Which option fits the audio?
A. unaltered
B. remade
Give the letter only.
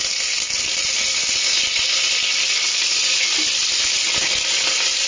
A